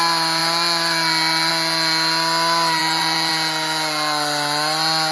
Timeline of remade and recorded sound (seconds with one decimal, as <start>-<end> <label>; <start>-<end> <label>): 0.0-2.8 recorded; 2.8-3.3 remade; 3.3-5.1 recorded